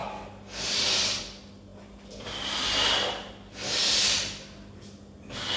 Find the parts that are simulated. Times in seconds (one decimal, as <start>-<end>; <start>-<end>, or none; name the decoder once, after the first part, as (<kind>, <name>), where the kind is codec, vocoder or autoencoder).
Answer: none